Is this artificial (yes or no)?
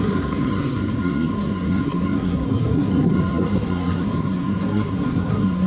yes